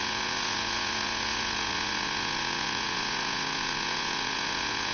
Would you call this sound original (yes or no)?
no